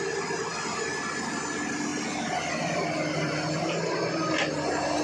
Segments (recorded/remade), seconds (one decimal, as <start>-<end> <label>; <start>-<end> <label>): 0.0-5.0 recorded